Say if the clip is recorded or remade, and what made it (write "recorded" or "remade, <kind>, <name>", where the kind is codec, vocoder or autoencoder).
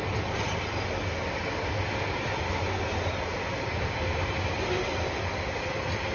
recorded